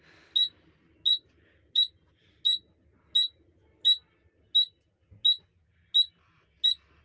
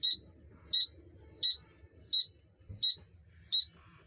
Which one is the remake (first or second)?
second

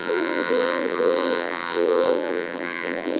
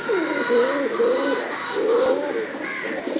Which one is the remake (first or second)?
first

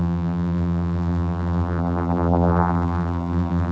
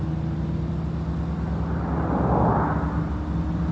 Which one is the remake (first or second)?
first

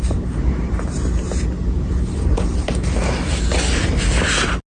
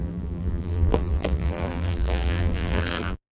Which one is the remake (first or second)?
second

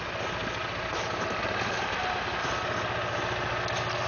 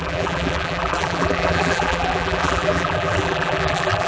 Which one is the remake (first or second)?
second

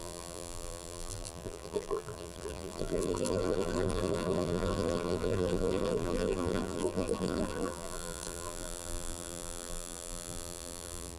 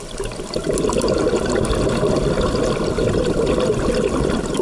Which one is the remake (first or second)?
first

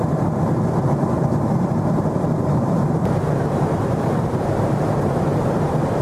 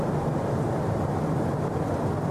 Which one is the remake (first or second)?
first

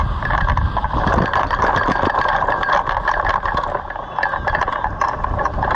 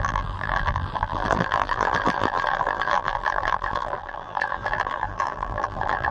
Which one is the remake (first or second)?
second